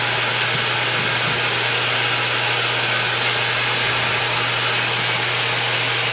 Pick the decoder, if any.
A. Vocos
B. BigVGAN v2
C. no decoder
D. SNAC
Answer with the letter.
C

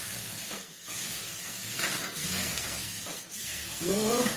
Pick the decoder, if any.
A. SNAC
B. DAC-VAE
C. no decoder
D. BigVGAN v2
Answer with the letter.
A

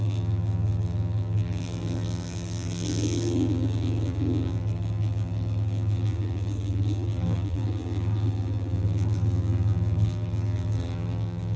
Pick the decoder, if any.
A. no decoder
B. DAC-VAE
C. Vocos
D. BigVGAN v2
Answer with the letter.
D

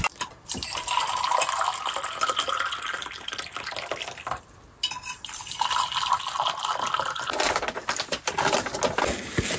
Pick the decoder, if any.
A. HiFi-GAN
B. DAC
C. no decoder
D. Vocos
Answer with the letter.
C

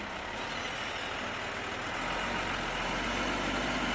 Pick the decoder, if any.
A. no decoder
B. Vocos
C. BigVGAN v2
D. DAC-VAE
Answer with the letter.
A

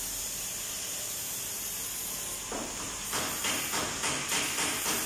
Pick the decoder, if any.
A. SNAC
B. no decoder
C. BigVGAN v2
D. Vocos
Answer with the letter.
C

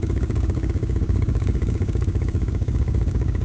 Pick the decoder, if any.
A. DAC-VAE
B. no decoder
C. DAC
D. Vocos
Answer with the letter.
C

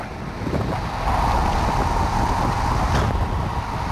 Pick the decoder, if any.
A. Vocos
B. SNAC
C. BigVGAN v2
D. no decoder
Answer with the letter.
D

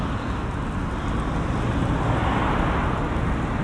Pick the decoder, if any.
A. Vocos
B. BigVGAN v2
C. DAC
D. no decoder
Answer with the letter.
D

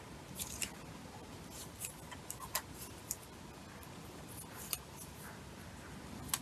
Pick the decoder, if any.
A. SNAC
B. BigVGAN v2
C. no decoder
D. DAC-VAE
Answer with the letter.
C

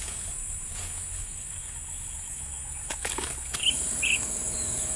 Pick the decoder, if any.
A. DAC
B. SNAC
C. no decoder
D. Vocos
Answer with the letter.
A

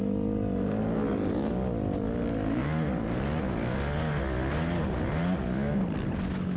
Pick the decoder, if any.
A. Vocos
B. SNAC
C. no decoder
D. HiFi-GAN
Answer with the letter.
C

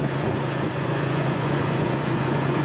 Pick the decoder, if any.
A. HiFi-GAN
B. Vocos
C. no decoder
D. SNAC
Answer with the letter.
B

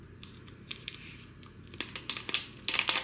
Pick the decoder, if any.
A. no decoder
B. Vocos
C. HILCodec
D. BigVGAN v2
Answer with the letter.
A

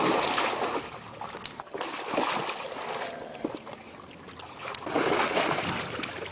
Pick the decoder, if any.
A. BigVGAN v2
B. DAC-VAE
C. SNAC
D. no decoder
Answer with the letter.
D